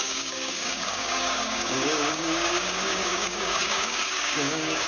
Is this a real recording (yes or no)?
no